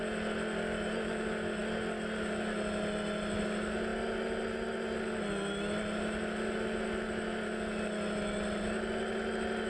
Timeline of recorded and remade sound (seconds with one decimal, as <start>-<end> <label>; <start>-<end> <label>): 0.0-9.7 recorded